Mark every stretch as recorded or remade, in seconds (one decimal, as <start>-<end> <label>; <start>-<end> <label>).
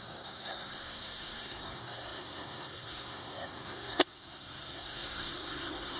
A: 0.0-6.0 remade